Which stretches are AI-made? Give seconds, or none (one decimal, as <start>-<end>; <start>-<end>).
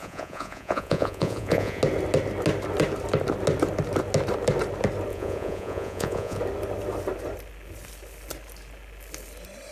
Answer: 0.0-1.8; 5.1-6.4